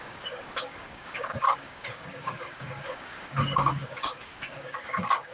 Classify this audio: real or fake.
fake